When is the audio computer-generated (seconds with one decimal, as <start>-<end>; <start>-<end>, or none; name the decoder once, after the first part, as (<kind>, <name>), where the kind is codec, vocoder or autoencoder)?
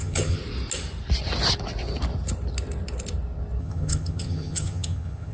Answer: 0.0-0.4 (vocoder, HiFi-GAN); 3.6-5.3